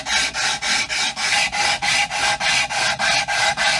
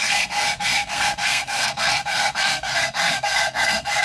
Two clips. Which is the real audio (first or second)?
first